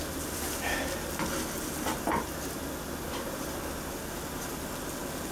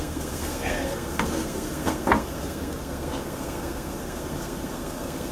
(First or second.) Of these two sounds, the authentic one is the first